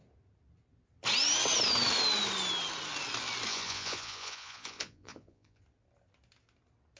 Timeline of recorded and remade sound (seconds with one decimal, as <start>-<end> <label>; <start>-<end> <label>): 0.0-3.5 recorded; 3.5-5.6 remade; 5.6-7.0 recorded